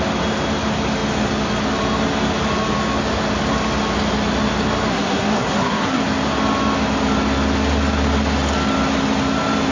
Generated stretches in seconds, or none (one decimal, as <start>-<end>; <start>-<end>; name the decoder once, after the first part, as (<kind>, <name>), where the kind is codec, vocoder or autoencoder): 4.9-6.0 (codec, SNAC)